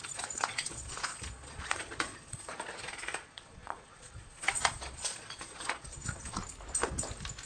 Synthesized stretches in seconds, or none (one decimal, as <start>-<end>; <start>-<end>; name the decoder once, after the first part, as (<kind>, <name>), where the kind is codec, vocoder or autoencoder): 0.0-6.4 (vocoder, Vocos)